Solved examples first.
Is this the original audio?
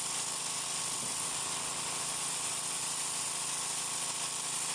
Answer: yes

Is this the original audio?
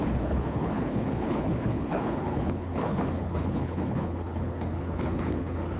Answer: no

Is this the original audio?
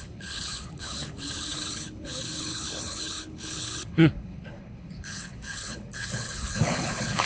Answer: no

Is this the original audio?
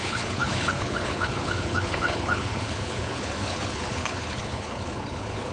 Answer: no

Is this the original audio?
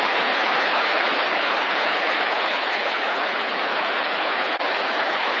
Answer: no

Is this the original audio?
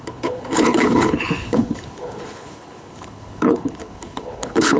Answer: no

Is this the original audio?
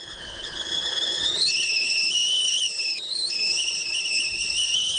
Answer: no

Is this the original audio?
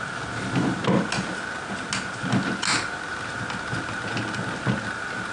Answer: yes